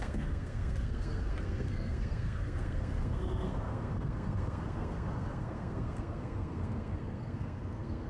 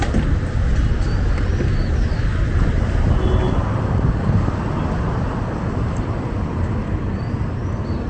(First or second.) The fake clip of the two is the first